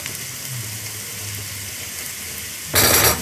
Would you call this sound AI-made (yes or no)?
no